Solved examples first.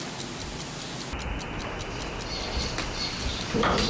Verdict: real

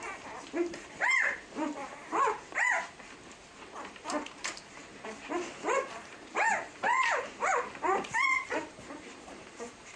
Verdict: fake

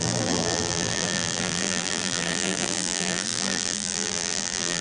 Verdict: fake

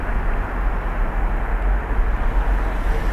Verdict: real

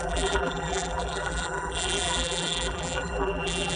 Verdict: fake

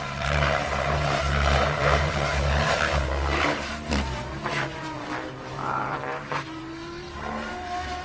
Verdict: fake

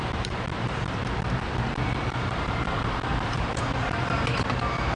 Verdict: fake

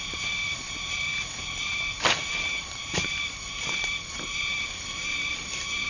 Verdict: fake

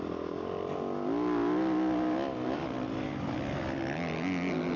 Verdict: real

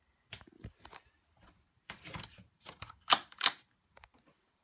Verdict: fake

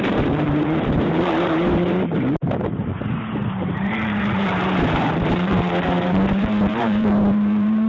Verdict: fake